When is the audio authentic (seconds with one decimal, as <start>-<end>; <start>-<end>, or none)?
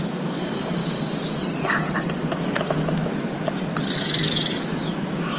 0.8-2.2; 3.1-4.0